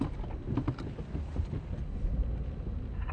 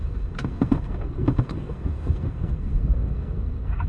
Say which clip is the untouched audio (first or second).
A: first